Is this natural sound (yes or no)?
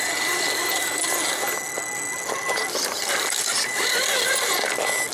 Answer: yes